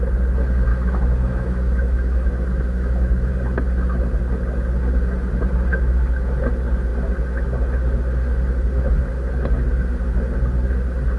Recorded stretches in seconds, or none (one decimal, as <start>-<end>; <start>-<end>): 0.0-0.7; 3.3-5.7; 6.4-11.2

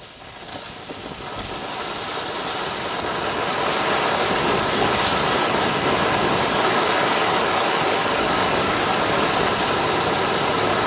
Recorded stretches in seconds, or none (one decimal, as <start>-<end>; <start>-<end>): 0.0-0.5; 1.5-6.2; 9.0-10.9

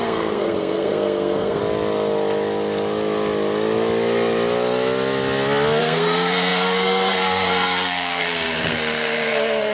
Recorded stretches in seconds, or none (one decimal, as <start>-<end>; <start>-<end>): 1.6-5.8

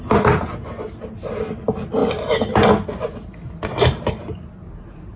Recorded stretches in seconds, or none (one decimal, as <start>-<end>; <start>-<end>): 0.0-5.2

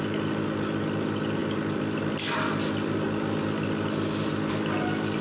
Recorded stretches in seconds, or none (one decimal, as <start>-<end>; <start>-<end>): 0.0-5.2